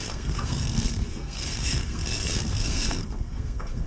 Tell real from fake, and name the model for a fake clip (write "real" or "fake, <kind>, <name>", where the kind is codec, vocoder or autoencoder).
fake, codec, SNAC